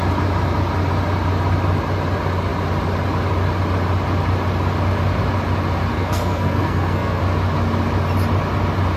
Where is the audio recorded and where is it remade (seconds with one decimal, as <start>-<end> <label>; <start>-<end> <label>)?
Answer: 0.0-5.9 recorded; 5.9-7.2 remade; 7.2-9.0 recorded